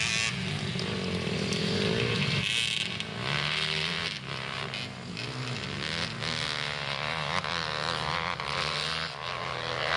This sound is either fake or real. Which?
real